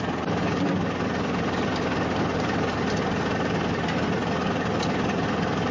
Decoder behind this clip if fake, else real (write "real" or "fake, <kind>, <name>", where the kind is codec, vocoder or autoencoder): real